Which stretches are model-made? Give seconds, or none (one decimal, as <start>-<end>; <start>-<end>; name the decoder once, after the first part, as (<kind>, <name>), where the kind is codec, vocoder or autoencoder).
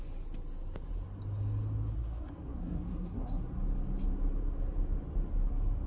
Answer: 1.9-3.4 (codec, SNAC)